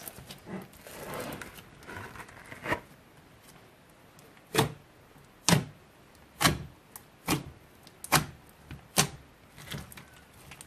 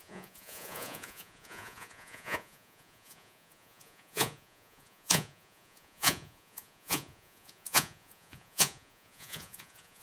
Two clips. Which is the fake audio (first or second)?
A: second